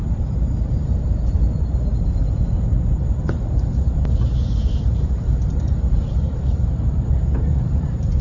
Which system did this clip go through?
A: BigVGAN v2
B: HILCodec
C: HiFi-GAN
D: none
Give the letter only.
A